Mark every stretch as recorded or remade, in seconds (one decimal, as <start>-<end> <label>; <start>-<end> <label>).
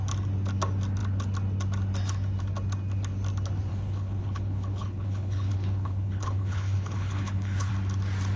0.0-3.7 recorded; 3.7-7.7 remade; 7.7-8.4 recorded